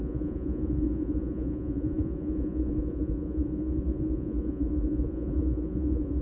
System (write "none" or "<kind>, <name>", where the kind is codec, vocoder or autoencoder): vocoder, Vocos